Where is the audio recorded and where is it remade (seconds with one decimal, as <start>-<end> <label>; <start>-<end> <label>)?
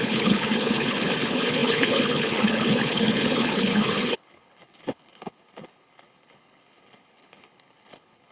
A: 0.0-8.3 remade